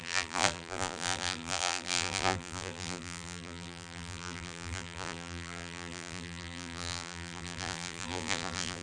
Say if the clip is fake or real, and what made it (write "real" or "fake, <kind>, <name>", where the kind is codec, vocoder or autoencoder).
fake, vocoder, BigVGAN v2